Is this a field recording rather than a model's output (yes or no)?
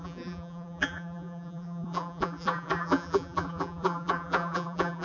no